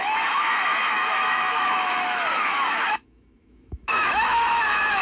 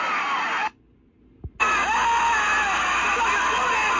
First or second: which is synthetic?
first